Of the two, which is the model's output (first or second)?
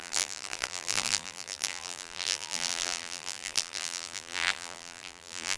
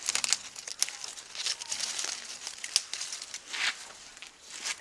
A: first